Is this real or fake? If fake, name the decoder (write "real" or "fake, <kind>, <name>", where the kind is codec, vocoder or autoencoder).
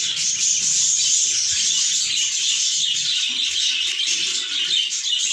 real